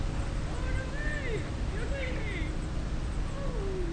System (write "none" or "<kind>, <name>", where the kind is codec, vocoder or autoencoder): none